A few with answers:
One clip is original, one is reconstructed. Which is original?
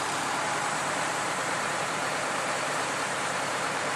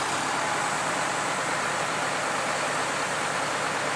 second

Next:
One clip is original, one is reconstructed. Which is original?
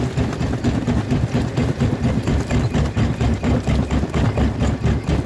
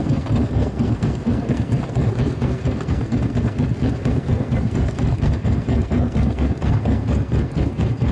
first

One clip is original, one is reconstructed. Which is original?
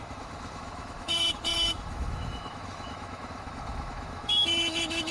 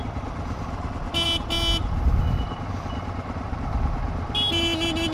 second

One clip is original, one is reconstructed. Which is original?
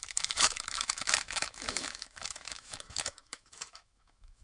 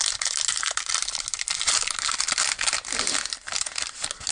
second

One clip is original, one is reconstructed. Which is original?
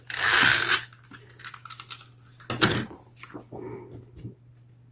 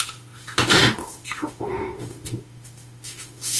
first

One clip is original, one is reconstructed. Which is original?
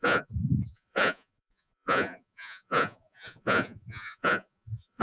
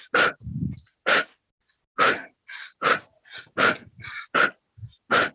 second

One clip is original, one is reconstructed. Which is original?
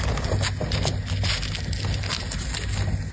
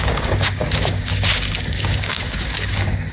first